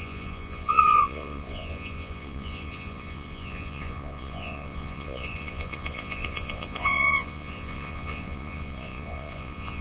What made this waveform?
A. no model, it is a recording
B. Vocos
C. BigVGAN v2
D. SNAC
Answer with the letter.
B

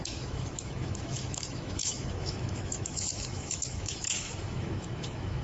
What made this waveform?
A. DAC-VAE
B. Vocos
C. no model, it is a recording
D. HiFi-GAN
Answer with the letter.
A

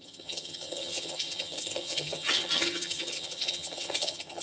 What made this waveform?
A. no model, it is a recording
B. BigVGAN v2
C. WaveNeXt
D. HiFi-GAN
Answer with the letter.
D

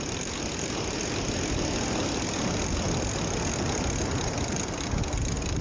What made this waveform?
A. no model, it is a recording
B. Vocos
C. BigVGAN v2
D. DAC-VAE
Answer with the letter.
A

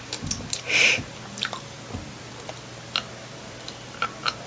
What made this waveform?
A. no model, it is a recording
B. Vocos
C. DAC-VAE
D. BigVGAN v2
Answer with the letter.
A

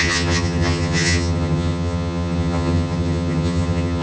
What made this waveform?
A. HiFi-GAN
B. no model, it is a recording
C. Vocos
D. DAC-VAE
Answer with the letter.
A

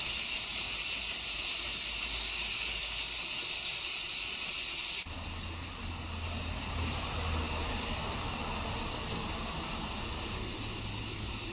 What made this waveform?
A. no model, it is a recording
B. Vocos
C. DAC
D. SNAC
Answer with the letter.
A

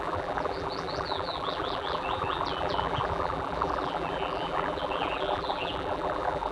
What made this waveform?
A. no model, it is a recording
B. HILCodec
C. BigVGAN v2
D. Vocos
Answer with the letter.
C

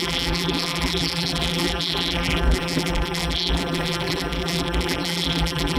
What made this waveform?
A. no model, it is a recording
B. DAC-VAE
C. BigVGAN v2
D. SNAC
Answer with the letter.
C